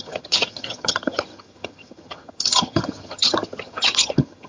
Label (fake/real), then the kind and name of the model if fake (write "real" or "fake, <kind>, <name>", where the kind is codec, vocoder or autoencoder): fake, vocoder, HiFi-GAN